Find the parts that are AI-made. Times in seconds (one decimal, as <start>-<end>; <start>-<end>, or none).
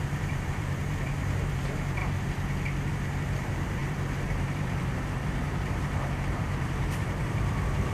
0.0-2.0; 2.9-7.9